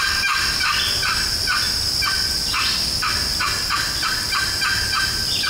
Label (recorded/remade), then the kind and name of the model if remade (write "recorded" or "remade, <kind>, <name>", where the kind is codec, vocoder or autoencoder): recorded